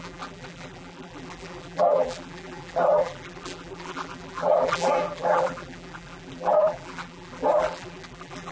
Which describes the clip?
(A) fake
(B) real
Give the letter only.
A